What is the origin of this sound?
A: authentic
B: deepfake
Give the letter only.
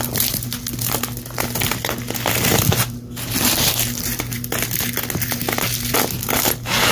A